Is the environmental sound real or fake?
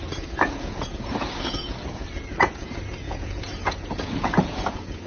fake